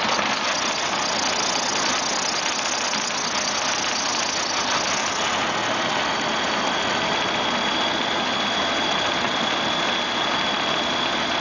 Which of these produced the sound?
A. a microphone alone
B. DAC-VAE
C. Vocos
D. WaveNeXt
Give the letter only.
A